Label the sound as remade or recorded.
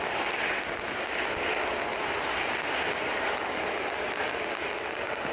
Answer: recorded